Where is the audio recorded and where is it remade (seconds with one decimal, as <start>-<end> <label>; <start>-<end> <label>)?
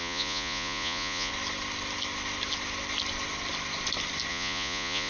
0.0-1.3 remade; 1.3-4.3 recorded; 4.3-5.1 remade